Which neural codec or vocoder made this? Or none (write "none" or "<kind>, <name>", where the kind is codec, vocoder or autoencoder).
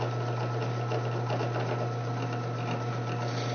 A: none